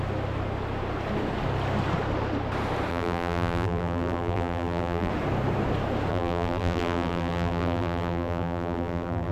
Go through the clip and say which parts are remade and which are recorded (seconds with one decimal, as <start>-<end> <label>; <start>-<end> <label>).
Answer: 0.0-2.9 recorded; 2.9-5.1 remade; 5.1-6.1 recorded; 6.1-9.3 remade